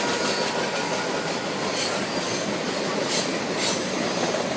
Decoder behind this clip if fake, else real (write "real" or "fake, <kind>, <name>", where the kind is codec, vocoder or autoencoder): real